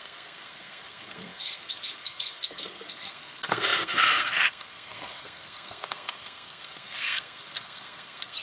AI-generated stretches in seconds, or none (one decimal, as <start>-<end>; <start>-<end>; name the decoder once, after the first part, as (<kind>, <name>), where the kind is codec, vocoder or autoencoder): 0.0-8.4 (codec, SNAC)